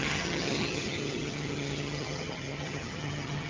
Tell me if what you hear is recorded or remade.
remade